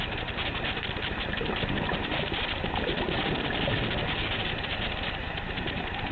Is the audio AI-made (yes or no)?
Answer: no